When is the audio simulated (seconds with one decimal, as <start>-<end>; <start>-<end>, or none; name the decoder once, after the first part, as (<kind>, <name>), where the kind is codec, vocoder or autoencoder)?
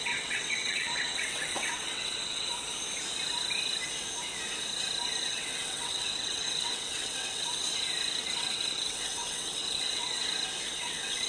0.0-2.5 (vocoder, WaveNeXt); 5.2-7.7; 8.4-10.2; 10.8-11.3